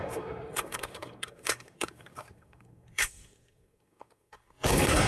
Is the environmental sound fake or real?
fake